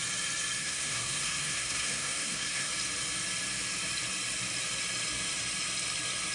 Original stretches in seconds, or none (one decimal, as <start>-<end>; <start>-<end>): 0.0-0.6; 2.7-6.3